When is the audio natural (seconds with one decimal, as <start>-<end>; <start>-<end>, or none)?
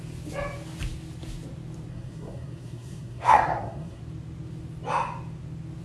0.0-1.9; 4.0-5.8